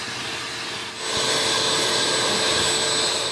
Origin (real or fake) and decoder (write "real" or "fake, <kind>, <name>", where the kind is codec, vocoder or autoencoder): real